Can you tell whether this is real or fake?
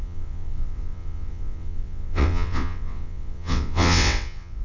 fake